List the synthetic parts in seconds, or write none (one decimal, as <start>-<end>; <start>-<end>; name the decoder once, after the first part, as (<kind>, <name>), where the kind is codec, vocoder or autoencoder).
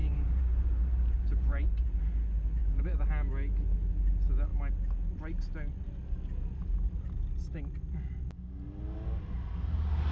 0.0-2.0 (vocoder, BigVGAN v2); 2.6-3.1